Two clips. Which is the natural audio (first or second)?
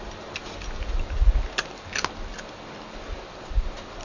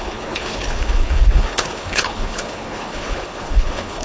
first